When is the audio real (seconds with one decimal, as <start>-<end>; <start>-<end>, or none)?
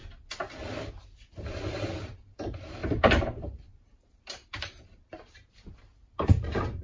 0.0-0.9